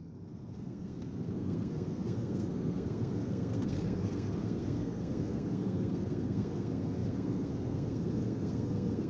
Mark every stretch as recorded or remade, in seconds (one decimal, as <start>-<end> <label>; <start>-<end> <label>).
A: 0.0-9.1 remade